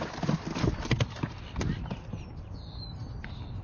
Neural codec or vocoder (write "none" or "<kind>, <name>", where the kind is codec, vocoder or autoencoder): none